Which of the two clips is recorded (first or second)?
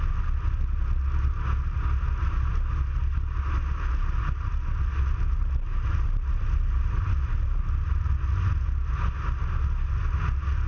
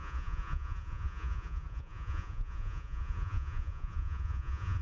first